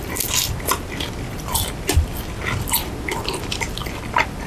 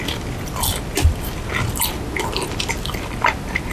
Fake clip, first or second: first